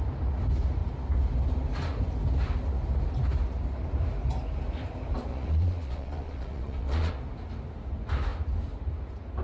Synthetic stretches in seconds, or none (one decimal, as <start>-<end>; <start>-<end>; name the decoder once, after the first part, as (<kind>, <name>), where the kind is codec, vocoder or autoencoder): 5.3-7.1 (vocoder, Vocos)